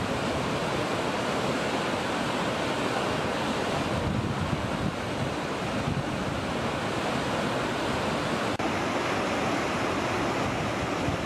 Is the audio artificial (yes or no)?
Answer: no